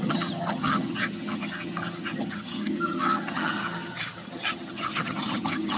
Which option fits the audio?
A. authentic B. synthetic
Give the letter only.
B